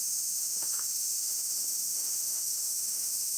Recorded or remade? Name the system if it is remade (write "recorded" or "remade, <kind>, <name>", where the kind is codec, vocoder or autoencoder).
remade, autoencoder, DAC-VAE